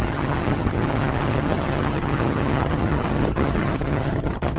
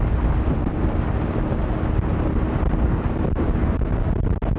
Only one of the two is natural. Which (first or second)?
second